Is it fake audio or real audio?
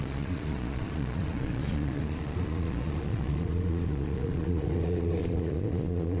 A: fake